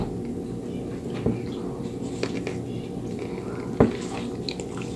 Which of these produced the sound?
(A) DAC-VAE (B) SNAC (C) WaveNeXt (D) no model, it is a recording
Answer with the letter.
D